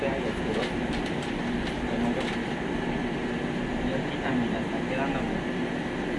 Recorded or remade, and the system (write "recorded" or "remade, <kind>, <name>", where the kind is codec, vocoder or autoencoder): recorded